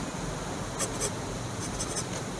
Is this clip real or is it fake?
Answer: real